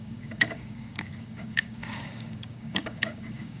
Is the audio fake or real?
fake